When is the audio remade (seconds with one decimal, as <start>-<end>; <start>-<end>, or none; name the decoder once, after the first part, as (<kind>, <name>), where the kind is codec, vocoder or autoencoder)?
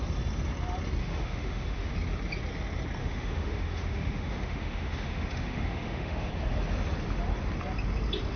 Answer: 1.0-1.9 (autoencoder, DAC-VAE); 3.0-6.3